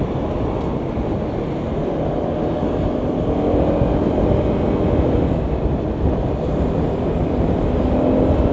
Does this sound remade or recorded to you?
recorded